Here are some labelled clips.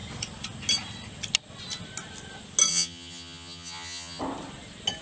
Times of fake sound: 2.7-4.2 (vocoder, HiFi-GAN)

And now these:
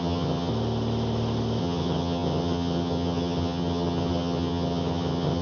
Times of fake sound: 0.0-0.5 (vocoder, HiFi-GAN); 1.6-5.4

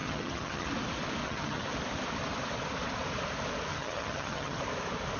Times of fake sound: 0.0-0.7 (vocoder, HiFi-GAN); 1.2-1.7; 3.7-4.6